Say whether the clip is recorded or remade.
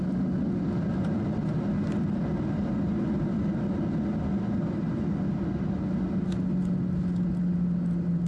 recorded